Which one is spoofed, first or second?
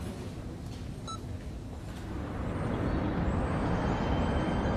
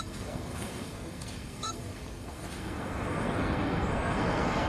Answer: second